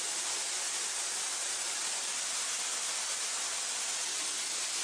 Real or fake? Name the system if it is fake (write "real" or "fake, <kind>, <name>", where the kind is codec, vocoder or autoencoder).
real